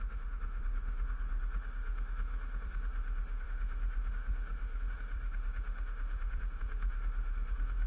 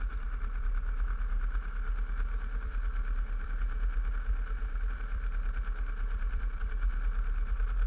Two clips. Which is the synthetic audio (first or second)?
first